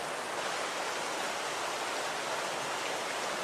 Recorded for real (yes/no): yes